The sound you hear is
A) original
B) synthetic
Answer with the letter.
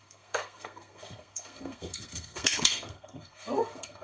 B